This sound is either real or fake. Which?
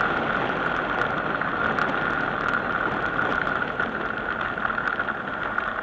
real